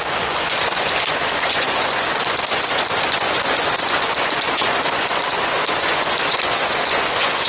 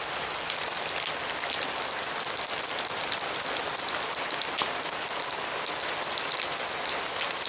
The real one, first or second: second